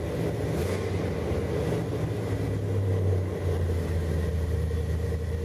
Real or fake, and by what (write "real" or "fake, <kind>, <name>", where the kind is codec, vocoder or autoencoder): real